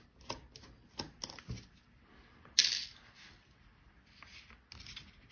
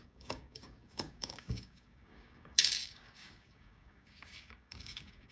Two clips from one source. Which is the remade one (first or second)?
second